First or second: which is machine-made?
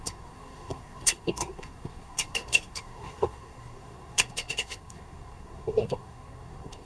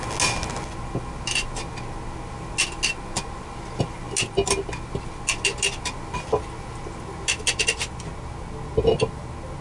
first